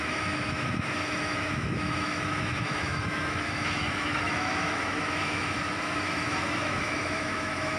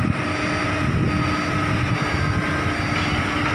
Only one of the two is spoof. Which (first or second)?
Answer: first